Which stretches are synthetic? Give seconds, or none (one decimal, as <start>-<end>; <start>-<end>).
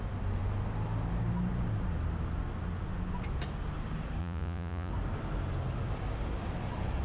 4.2-4.9